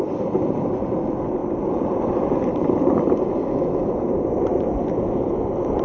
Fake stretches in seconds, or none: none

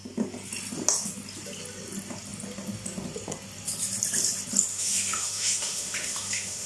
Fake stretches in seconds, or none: 4.7-6.7 (autoencoder, DAC-VAE)

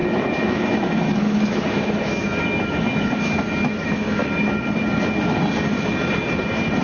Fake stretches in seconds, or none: 0.0-4.2 (autoencoder, DAC-VAE)

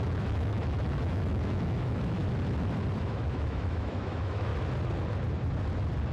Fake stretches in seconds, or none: 0.0-2.2 (autoencoder, DAC-VAE); 3.0-4.5